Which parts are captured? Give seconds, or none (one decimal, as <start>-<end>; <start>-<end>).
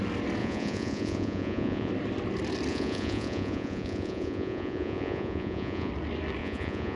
0.0-0.4; 1.9-2.7; 5.9-6.4